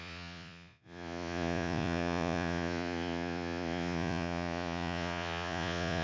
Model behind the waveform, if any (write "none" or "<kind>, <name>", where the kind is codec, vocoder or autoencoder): vocoder, Vocos